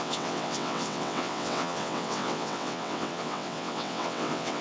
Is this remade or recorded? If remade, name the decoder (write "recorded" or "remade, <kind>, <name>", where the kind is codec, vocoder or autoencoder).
remade, vocoder, WaveNeXt